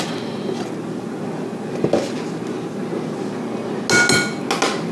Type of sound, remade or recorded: recorded